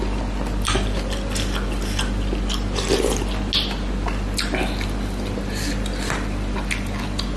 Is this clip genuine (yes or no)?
yes